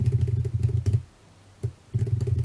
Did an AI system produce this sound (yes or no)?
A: no